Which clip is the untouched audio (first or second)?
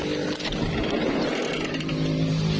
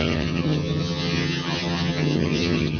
first